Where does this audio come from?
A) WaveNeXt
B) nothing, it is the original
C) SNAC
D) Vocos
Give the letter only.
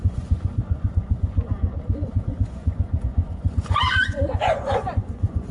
D